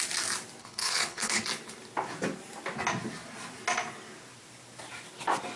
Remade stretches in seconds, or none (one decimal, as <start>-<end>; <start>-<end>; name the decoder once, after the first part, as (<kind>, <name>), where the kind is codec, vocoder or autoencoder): 0.6-1.4 (codec, HILCodec)